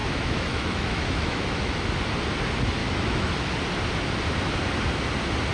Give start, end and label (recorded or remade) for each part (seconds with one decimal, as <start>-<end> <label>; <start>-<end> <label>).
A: 0.0-1.8 remade; 1.8-2.8 recorded; 2.8-3.3 remade; 3.3-5.5 recorded